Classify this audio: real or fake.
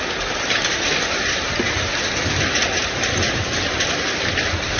real